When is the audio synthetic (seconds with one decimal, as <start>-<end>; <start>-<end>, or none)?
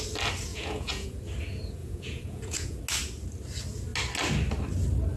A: 0.5-1.2; 1.8-2.8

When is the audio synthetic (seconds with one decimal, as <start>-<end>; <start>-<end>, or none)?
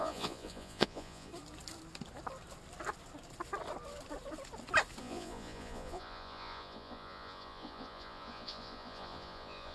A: 0.0-1.3; 5.0-9.7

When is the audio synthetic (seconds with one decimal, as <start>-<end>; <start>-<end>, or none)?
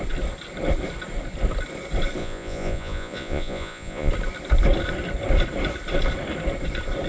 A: 2.2-4.1